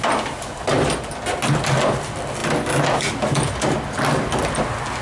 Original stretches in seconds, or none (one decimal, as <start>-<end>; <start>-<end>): 0.0-5.0